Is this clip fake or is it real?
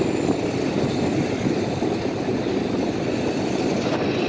real